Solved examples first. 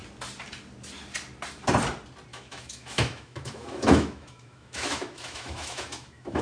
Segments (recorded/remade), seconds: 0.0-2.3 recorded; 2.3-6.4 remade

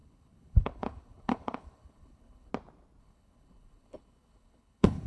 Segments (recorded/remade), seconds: 0.0-2.5 remade; 2.5-3.0 recorded; 3.0-5.1 remade

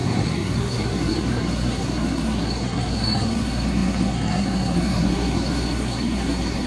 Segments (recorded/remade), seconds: 0.0-6.7 remade

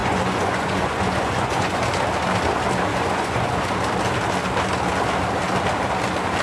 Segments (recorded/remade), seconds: 0.0-1.8 remade; 1.8-2.9 recorded; 2.9-3.7 remade; 3.7-6.4 recorded